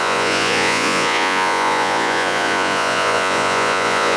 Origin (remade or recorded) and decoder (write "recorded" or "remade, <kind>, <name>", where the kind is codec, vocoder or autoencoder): remade, vocoder, Vocos